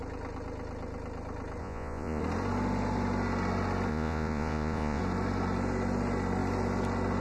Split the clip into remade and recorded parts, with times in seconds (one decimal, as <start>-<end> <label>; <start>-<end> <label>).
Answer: 0.0-1.6 recorded; 1.6-2.2 remade; 2.2-3.9 recorded; 3.9-5.0 remade; 5.0-7.2 recorded